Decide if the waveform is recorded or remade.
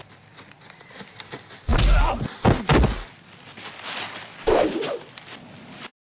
recorded